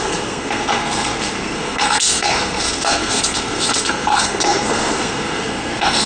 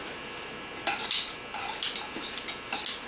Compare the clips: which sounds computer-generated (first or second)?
first